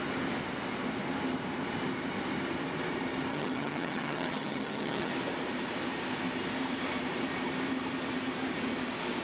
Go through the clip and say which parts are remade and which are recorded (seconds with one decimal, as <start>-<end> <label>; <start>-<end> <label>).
0.0-3.3 recorded; 3.3-5.1 remade; 5.1-9.2 recorded